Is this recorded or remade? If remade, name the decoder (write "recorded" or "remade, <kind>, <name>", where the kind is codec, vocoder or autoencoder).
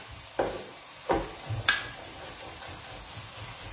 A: recorded